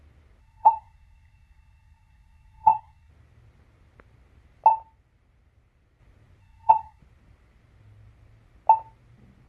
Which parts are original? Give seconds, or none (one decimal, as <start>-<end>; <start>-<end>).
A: 0.0-0.4; 3.1-6.4; 7.0-9.5